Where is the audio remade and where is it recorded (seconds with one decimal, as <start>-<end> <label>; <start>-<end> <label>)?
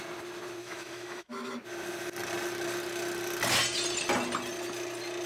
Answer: 0.0-0.6 recorded; 0.6-1.5 remade; 1.5-5.3 recorded